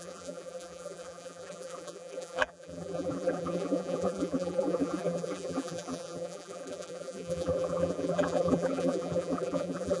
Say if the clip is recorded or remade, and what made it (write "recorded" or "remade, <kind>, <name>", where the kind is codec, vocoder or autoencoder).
remade, vocoder, BigVGAN v2